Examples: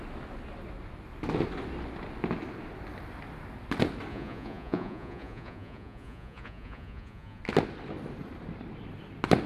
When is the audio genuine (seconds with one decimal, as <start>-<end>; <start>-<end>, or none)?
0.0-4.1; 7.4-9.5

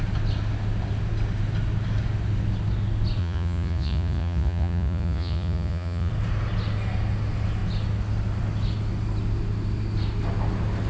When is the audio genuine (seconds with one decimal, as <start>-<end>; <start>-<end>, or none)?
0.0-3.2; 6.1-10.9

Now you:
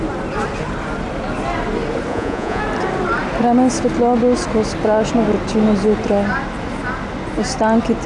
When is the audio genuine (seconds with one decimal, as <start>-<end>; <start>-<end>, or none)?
0.0-2.1; 2.6-8.1

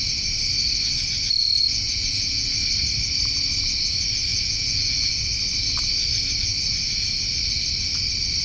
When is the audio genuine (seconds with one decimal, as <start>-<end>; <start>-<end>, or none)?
0.0-1.4; 2.5-4.3; 5.2-8.4

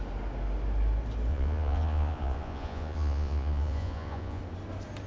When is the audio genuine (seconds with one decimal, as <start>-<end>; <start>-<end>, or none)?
0.0-1.3; 4.4-5.1